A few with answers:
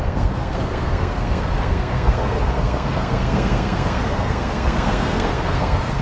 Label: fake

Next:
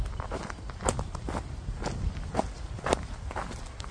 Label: real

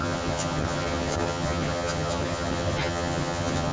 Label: fake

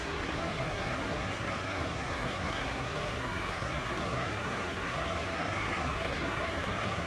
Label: fake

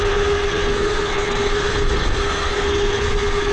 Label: fake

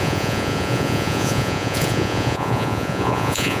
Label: fake